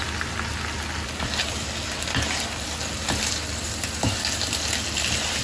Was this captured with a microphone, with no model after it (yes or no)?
yes